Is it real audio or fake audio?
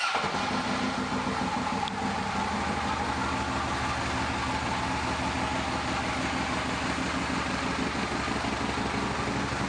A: real